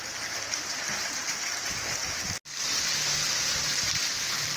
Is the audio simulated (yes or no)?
no